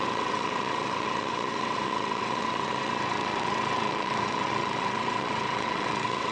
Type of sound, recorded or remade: remade